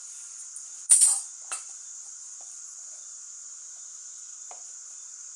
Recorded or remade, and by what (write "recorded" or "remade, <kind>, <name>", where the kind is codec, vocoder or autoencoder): remade, vocoder, BigVGAN v2